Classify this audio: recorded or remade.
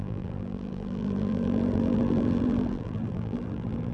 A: remade